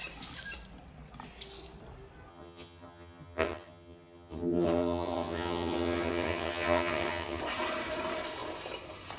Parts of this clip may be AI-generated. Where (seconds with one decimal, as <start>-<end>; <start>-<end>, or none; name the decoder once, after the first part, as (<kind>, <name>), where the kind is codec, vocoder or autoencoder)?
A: 2.3-7.4 (vocoder, HiFi-GAN)

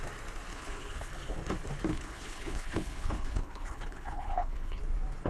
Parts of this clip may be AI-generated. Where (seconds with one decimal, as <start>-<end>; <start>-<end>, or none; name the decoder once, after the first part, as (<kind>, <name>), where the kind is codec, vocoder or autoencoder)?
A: 0.5-1.1 (codec, HILCodec); 1.9-4.8

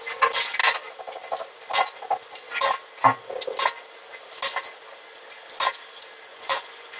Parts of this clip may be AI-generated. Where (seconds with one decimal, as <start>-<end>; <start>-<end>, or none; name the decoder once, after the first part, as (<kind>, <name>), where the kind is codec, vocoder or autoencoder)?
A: 6.3-7.0 (vocoder, Vocos)